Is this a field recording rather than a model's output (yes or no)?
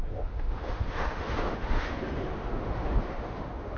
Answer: no